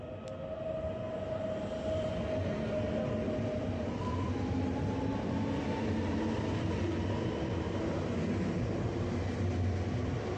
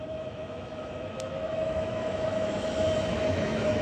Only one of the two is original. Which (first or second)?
first